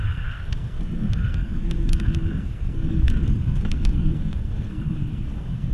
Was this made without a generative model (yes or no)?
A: no